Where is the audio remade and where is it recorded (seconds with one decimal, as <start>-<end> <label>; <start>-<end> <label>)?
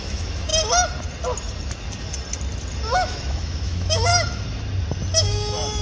0.0-0.5 remade; 0.5-2.9 recorded; 2.9-4.1 remade; 4.1-5.2 recorded; 5.2-5.8 remade